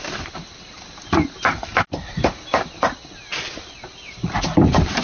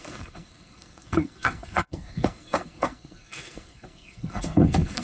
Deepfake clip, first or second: second